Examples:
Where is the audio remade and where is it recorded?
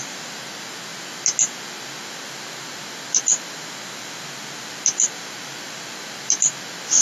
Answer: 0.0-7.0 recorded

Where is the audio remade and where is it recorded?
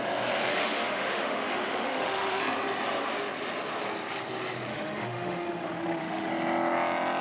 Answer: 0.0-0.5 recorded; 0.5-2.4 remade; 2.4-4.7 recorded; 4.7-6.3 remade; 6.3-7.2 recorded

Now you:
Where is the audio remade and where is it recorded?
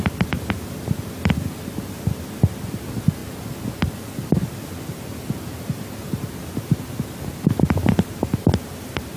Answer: 0.0-9.2 recorded